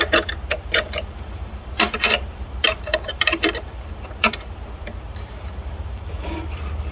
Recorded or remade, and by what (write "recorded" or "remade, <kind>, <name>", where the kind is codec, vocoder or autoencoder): remade, vocoder, BigVGAN v2